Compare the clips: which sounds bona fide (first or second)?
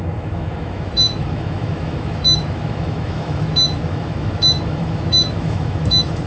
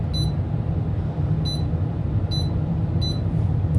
second